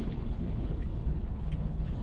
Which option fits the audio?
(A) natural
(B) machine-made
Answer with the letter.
B